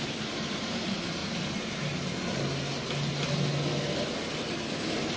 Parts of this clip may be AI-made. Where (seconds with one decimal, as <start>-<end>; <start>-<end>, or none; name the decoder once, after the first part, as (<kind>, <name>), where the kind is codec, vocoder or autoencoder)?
0.0-1.2 (vocoder, BigVGAN v2); 4.3-5.2

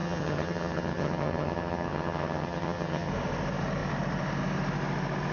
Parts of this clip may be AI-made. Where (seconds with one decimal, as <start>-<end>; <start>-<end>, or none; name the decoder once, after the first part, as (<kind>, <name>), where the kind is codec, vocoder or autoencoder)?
0.0-3.1 (vocoder, HiFi-GAN)

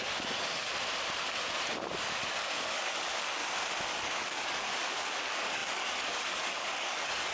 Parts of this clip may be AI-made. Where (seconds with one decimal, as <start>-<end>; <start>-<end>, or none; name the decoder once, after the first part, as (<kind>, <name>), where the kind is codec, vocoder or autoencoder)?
0.0-0.7 (codec, DAC); 2.0-3.4; 3.9-7.3

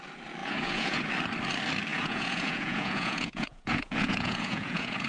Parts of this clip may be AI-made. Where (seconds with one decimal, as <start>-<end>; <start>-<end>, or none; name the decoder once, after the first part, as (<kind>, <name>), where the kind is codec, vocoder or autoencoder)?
0.4-1.1 (vocoder, Vocos); 1.9-5.1

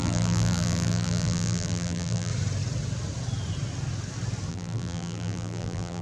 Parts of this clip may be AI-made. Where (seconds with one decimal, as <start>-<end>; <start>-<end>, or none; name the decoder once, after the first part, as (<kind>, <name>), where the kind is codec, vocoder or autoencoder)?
0.0-2.3 (vocoder, BigVGAN v2); 4.5-6.0

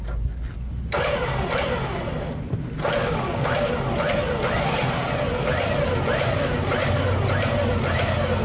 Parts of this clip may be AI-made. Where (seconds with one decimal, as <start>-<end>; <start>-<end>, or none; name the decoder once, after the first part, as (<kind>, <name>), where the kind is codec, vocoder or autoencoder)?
3.0-3.7 (codec, DAC)

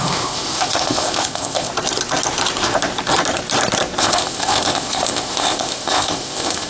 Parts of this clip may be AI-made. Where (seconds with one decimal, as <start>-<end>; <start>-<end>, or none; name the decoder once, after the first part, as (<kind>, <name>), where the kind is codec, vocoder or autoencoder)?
0.0-1.7 (codec, ZipCodec); 4.0-6.7

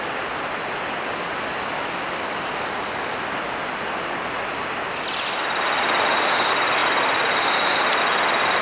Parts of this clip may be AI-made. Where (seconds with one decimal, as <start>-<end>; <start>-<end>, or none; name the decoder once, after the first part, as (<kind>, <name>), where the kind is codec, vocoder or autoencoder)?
none